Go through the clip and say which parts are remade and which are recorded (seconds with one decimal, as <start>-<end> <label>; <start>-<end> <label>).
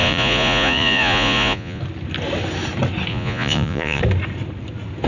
0.0-1.8 remade; 1.8-3.1 recorded; 3.1-4.0 remade; 4.0-5.1 recorded